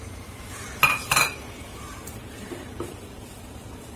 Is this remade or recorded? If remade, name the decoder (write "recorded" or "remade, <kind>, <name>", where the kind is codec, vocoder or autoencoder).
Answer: remade, vocoder, BigVGAN v2